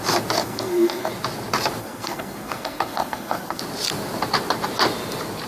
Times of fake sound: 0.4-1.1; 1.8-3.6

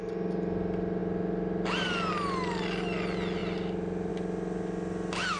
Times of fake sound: none